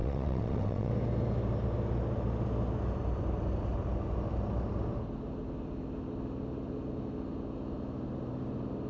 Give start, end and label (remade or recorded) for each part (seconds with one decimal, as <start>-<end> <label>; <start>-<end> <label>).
0.0-0.9 remade; 0.9-8.9 recorded